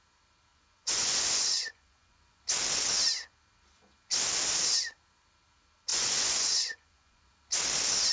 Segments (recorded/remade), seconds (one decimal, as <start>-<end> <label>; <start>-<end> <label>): 0.0-0.5 recorded; 0.5-2.4 remade; 2.4-5.9 recorded; 5.9-7.3 remade; 7.3-8.1 recorded